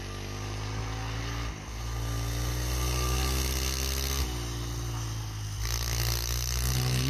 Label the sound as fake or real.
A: real